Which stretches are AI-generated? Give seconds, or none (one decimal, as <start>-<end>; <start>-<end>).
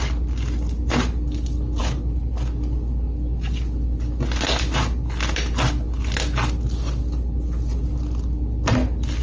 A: none